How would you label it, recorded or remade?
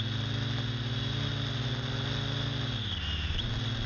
recorded